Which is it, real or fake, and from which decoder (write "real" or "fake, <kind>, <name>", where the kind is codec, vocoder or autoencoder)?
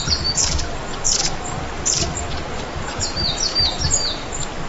real